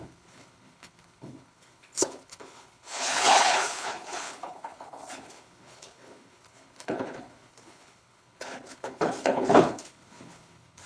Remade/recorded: remade